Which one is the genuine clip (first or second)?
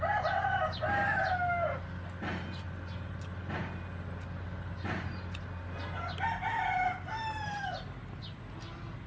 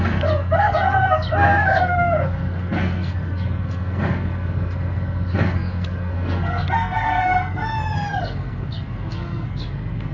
first